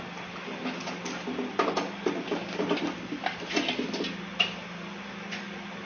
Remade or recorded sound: recorded